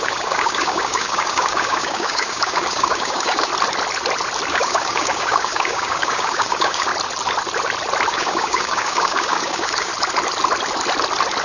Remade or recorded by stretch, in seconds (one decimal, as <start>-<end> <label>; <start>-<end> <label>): 0.0-3.5 remade; 3.5-4.5 recorded; 4.5-6.9 remade; 6.9-8.1 recorded; 8.1-9.9 remade; 9.9-11.4 recorded